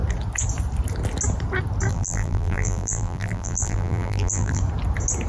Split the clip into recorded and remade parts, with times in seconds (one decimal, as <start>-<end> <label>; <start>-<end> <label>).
0.0-1.9 recorded; 1.9-4.6 remade; 4.6-5.3 recorded